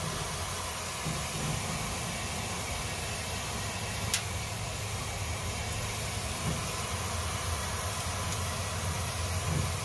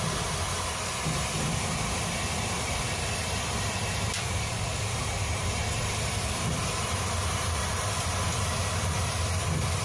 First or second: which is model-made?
second